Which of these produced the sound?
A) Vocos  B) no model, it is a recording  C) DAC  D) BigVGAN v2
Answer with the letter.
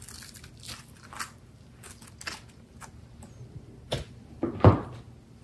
B